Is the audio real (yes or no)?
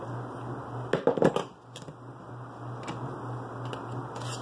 yes